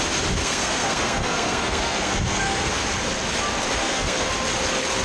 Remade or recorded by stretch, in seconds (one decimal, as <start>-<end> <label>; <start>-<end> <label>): 0.0-0.4 recorded; 0.4-2.7 remade; 2.7-3.8 recorded; 3.8-4.3 remade; 4.3-5.0 recorded